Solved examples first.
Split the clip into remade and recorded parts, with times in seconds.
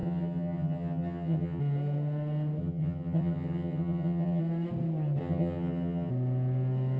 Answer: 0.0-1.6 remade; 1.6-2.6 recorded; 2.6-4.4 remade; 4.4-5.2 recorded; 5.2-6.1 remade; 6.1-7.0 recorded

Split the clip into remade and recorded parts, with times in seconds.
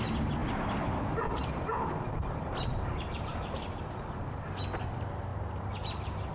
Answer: 0.0-0.4 recorded; 0.4-4.2 remade; 4.2-5.3 recorded; 5.3-6.3 remade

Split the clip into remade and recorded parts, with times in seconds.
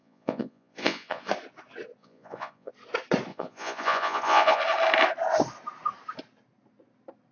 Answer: 0.0-1.3 remade; 1.3-2.0 recorded; 2.0-2.7 remade; 2.7-3.3 recorded; 3.3-4.6 remade; 4.6-7.3 recorded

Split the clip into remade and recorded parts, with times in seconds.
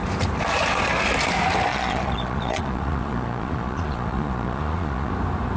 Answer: 0.0-1.7 recorded; 1.7-5.1 remade; 5.1-5.6 recorded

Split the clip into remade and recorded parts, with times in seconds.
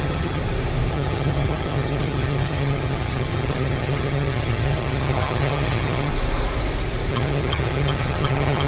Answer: 0.0-0.4 remade; 0.4-0.9 recorded; 0.9-6.1 remade; 6.1-7.1 recorded; 7.1-8.7 remade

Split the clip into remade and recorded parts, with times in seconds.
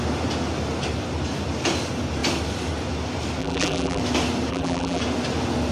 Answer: 0.0-3.4 recorded; 3.4-4.0 remade; 4.0-4.5 recorded; 4.5-5.0 remade; 5.0-5.7 recorded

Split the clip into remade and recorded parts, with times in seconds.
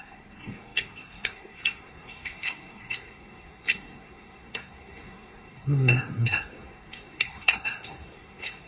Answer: 0.0-8.7 remade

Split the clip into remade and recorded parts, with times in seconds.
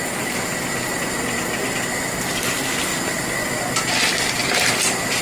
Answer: 0.0-4.4 recorded; 4.4-5.2 remade